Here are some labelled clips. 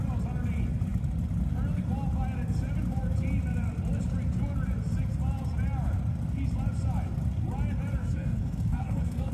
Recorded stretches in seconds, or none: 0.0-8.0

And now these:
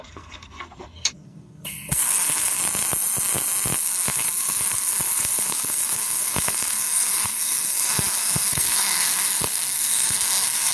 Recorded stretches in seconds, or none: 2.6-3.8

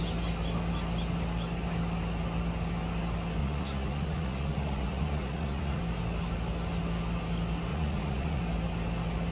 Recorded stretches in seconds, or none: 0.0-3.4; 5.8-7.7; 8.4-9.3

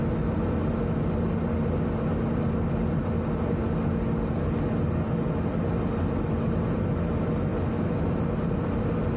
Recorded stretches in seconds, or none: 0.0-9.2

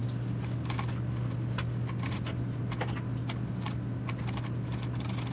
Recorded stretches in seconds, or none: 0.0-5.3

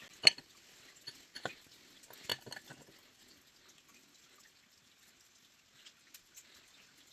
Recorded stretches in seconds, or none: 0.0-7.1

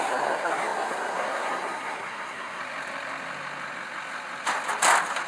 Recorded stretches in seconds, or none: 2.6-5.3